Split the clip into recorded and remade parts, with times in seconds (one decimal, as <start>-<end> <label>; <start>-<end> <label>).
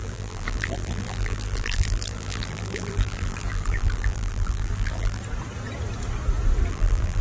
0.0-5.2 remade; 5.2-6.7 recorded; 6.7-7.2 remade